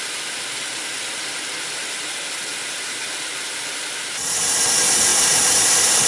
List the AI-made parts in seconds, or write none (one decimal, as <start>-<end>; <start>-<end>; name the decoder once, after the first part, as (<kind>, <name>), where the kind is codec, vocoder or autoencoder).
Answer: 5.1-6.1 (vocoder, BigVGAN v2)